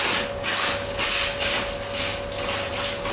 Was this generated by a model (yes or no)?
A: no